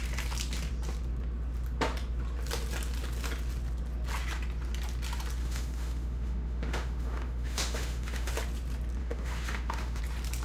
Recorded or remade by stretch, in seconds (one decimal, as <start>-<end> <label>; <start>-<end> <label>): 0.0-5.4 recorded; 5.4-8.3 remade; 8.3-9.0 recorded; 9.0-10.0 remade; 10.0-10.4 recorded

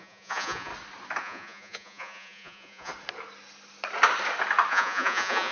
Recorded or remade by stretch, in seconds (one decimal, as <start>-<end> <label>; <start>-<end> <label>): 0.0-0.7 remade; 0.7-1.2 recorded; 1.2-2.9 remade; 2.9-4.7 recorded; 4.7-5.5 remade

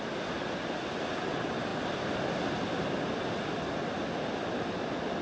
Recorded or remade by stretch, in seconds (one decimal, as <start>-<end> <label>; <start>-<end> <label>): 0.0-5.2 recorded

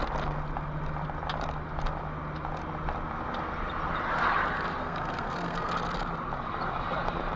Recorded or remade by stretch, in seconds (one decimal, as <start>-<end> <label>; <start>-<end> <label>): 0.0-4.8 recorded; 4.8-5.7 remade; 5.7-7.4 recorded

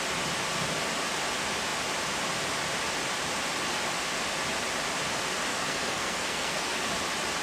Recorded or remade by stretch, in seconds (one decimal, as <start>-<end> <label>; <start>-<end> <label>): 0.0-5.5 recorded; 5.5-6.9 remade; 6.9-7.4 recorded

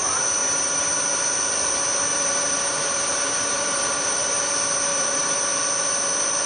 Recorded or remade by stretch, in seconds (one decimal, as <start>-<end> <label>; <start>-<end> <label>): 0.0-0.4 recorded; 0.4-0.9 remade; 0.9-2.1 recorded; 2.1-4.5 remade; 4.5-4.9 recorded; 4.9-5.4 remade; 5.4-6.5 recorded

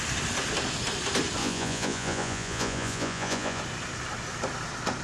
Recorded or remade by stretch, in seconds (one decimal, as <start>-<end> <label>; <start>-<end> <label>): 0.0-1.4 recorded; 1.4-3.6 remade; 3.6-5.0 recorded

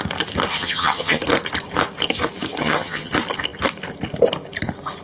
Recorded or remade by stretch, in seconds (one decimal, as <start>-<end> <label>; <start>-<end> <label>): 0.0-0.5 recorded; 0.5-1.2 remade; 1.2-2.6 recorded; 2.6-3.1 remade; 3.1-5.0 recorded